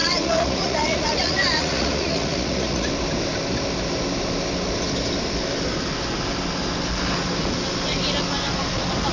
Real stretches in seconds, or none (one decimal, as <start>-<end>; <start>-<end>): 2.9-9.1